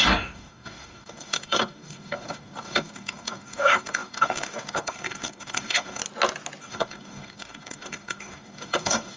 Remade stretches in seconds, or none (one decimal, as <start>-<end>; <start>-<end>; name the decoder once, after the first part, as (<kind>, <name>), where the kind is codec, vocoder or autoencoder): 0.0-6.0 (codec, DAC); 6.6-9.2